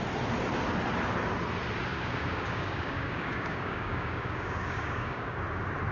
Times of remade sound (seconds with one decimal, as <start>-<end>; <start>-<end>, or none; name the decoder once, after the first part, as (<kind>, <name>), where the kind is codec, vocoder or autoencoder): 1.9-5.4 (codec, DAC)